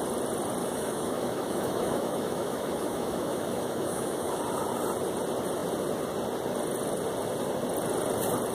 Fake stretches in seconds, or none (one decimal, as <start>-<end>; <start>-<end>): 0.6-4.4